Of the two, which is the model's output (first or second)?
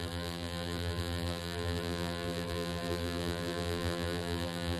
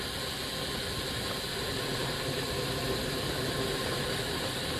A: first